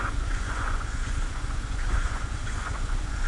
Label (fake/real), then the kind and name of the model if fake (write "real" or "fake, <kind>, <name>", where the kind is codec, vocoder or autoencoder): fake, vocoder, Vocos